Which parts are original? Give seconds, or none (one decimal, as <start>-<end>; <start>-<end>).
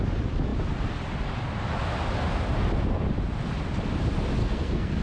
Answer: 0.0-4.4